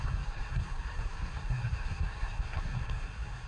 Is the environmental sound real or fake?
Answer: fake